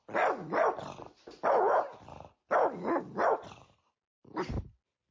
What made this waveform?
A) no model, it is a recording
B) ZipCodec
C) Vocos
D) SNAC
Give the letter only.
A